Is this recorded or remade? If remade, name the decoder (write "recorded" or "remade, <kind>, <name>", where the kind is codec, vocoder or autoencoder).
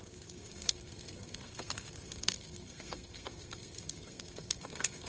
remade, codec, SNAC